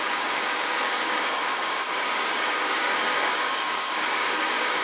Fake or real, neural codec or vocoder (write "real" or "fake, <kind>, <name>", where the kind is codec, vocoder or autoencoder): fake, codec, DAC